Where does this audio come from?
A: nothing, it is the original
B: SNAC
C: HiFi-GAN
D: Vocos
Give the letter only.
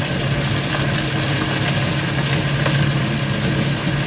A